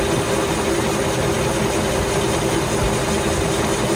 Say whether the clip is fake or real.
real